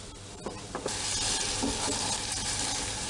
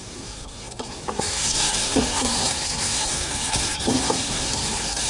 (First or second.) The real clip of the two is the first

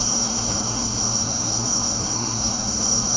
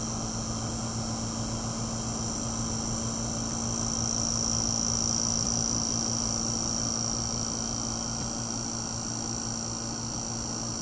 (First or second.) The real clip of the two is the second